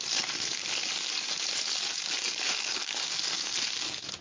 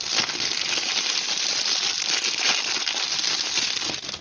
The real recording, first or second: second